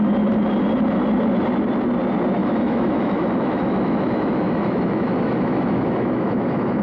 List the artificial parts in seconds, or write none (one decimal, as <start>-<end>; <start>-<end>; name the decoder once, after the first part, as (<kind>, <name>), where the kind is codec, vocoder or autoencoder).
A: 2.4-6.8 (autoencoder, DAC-VAE)